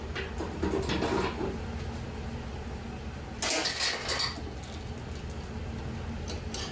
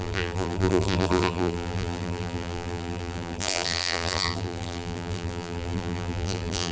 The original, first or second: first